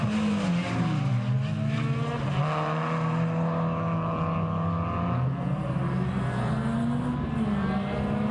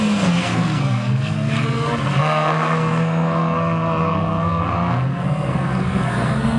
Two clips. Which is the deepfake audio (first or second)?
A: second